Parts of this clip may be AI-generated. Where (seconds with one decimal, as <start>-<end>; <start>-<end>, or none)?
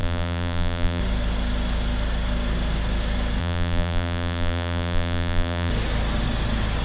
0.0-1.0; 3.4-5.7